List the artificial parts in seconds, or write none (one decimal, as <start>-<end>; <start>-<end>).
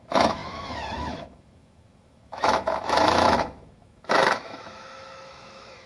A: 0.0-5.9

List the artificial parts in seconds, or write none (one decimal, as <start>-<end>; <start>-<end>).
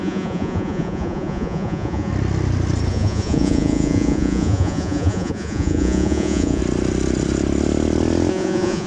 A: 0.0-2.1; 2.9-6.6; 8.3-8.9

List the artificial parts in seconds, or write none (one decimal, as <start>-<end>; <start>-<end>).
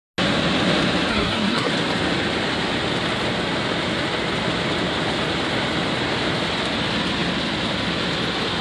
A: 1.1-1.7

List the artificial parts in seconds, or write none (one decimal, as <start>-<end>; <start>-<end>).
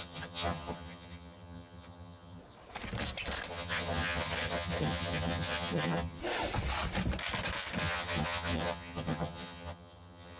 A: 0.0-2.4; 3.5-6.2; 7.8-10.4